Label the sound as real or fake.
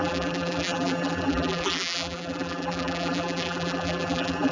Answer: fake